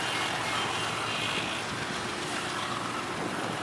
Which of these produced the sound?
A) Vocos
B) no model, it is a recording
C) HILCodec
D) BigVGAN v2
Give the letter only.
B